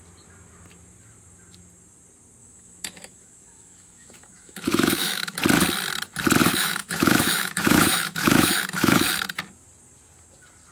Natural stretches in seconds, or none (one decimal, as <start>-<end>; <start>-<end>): 0.0-2.4; 5.4-6.4; 9.1-10.7